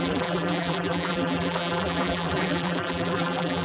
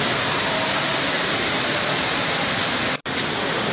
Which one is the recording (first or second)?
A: second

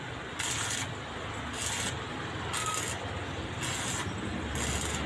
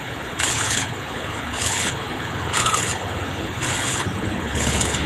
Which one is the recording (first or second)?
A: first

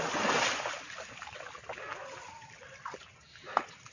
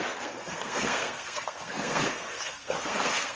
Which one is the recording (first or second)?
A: first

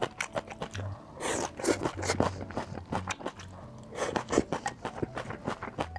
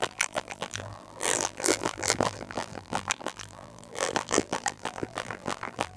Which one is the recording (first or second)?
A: first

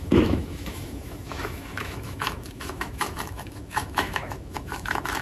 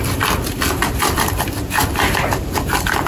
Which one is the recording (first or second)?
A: second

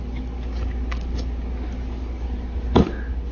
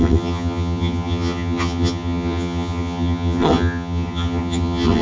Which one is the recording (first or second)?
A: first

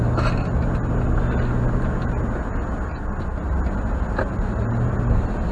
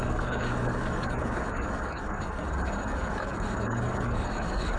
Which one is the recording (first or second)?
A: first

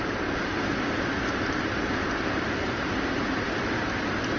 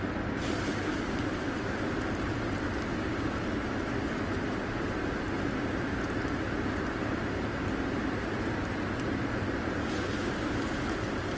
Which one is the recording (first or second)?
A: second